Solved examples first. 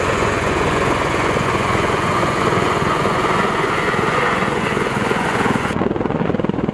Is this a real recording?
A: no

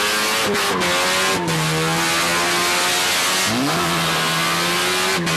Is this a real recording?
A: yes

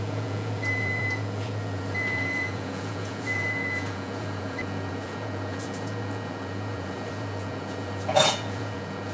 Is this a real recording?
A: no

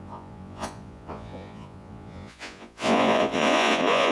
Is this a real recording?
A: no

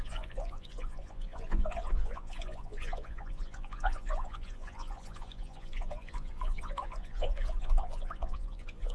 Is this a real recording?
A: no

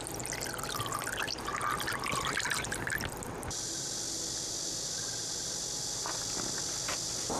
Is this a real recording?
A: yes